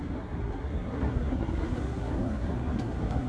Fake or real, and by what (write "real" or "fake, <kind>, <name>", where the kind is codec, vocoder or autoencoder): fake, codec, SNAC